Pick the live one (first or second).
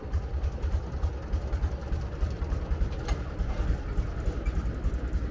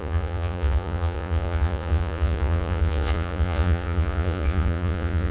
first